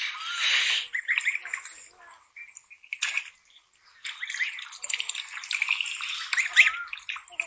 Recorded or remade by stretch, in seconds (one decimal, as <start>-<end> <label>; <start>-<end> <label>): 0.0-7.5 recorded